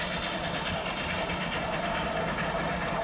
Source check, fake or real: real